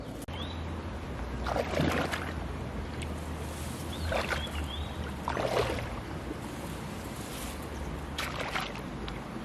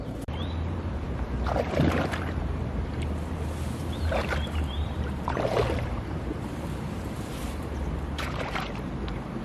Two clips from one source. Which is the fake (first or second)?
second